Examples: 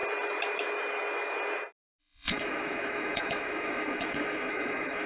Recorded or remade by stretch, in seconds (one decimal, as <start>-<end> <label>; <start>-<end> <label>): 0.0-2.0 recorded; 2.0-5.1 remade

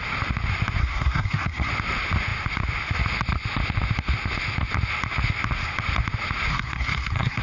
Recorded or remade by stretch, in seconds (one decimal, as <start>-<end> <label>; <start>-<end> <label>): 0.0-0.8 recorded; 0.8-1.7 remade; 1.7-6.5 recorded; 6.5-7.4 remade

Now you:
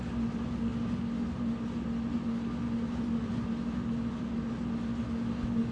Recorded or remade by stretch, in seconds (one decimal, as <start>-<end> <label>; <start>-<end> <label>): 0.0-5.7 recorded

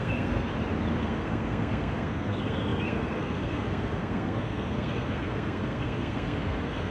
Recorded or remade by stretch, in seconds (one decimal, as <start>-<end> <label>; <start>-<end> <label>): 0.0-0.5 remade; 0.5-1.0 recorded; 1.0-6.9 remade

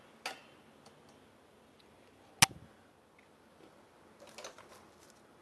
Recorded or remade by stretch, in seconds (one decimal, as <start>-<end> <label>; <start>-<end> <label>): 0.0-5.4 recorded